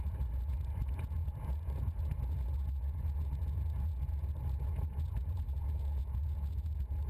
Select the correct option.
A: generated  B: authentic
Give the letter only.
A